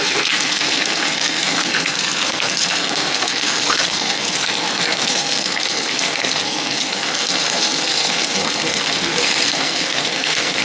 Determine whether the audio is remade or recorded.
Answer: remade